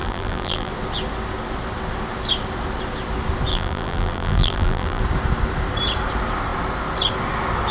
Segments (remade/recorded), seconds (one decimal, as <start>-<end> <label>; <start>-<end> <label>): 0.0-0.7 remade; 0.7-3.5 recorded; 3.5-5.0 remade; 5.0-7.7 recorded